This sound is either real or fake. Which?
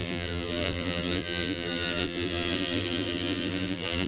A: fake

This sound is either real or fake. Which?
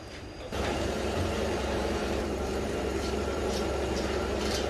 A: fake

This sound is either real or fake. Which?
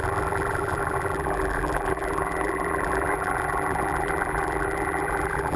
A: fake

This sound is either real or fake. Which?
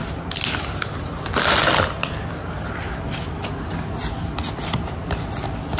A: real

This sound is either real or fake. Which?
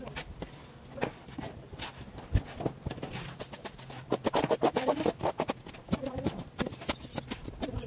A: real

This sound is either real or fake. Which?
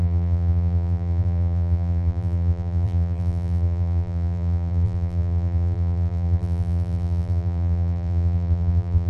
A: fake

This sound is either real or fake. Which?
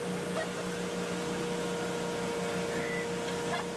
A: real